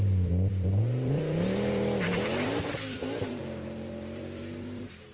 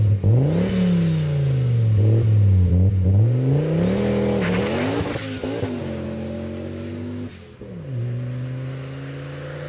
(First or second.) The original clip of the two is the second